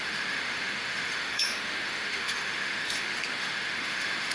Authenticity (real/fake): fake